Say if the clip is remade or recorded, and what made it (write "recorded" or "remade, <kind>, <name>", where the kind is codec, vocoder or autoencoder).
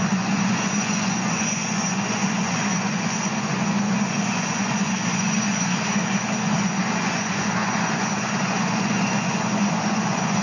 remade, vocoder, Vocos